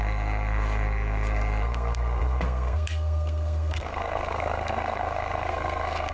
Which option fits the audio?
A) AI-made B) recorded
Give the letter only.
A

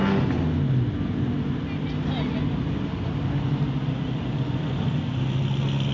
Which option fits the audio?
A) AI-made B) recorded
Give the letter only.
B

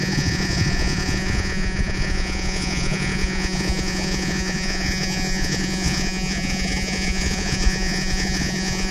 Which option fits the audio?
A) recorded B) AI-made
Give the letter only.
B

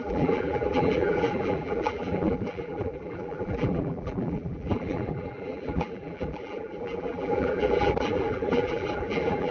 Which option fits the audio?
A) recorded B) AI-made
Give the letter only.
B